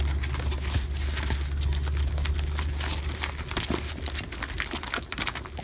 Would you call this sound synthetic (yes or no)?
no